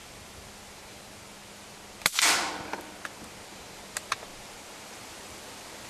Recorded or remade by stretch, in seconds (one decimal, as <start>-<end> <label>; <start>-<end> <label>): 0.0-4.3 recorded; 4.3-5.3 remade; 5.3-5.9 recorded